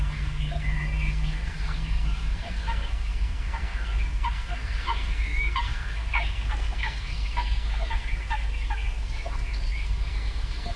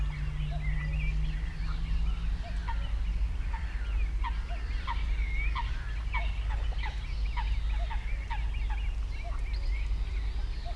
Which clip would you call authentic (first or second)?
second